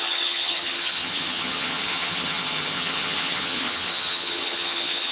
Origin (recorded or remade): remade